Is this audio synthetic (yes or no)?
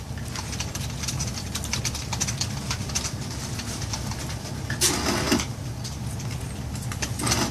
no